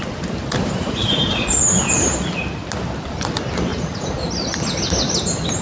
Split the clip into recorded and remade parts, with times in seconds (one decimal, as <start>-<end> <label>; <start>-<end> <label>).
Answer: 0.0-0.8 recorded; 0.8-1.5 remade; 1.5-3.7 recorded; 3.7-4.3 remade; 4.3-5.6 recorded